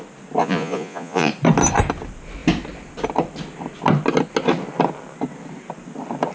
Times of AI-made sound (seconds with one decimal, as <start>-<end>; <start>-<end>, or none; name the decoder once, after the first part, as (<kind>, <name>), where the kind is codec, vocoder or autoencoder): 0.4-1.3 (vocoder, Vocos)

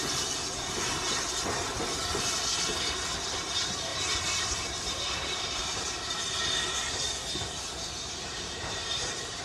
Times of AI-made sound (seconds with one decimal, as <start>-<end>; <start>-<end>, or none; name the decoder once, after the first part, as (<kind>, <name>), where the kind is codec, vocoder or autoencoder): 3.9-6.2 (vocoder, BigVGAN v2); 8.3-9.4

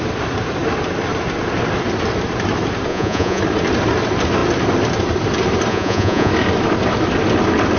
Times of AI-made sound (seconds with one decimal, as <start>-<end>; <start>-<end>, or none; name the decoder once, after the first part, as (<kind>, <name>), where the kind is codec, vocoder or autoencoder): 2.9-3.4 (vocoder, Vocos); 5.7-6.3

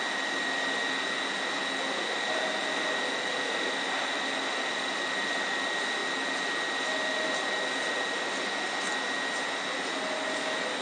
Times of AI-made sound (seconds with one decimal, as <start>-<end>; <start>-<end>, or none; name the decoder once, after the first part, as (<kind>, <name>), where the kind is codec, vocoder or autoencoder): none

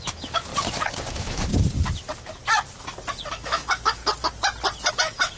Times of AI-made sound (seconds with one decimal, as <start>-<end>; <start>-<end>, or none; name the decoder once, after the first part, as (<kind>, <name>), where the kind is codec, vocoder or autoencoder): 0.0-0.5 (autoencoder, DAC-VAE); 1.1-1.5; 3.3-4.0; 4.9-5.4

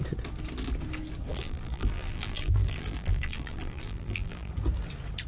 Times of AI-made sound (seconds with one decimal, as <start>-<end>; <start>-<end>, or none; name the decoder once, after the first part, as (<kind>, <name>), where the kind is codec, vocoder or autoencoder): 1.3-4.5 (vocoder, BigVGAN v2)